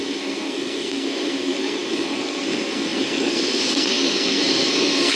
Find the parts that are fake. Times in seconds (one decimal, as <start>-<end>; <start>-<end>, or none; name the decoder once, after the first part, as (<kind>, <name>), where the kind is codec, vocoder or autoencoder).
0.0-5.2 (codec, SNAC)